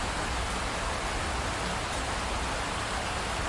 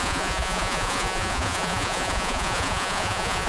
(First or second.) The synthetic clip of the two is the second